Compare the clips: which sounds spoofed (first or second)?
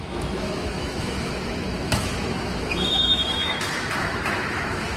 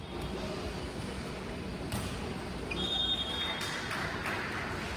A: first